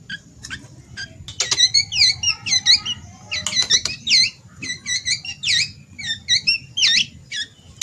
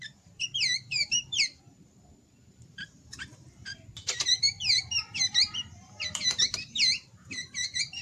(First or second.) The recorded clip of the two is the first